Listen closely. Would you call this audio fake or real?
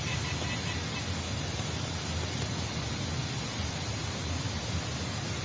real